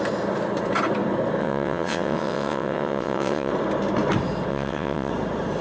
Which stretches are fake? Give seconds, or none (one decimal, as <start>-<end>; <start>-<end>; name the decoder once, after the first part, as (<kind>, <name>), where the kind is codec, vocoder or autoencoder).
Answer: 1.4-3.5 (vocoder, WaveNeXt); 4.5-5.1